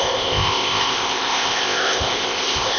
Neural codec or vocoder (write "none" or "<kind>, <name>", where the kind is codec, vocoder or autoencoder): codec, ZipCodec